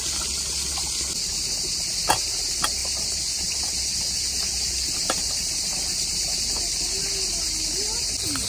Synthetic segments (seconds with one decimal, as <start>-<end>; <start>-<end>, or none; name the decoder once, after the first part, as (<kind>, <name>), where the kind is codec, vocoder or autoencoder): none